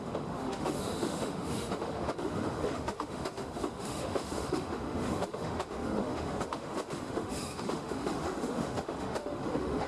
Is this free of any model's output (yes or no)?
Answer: no